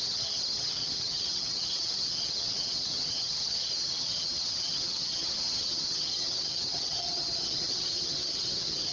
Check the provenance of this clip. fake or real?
fake